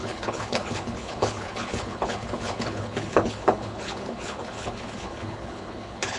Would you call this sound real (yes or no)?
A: no